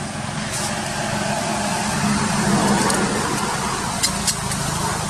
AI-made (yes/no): no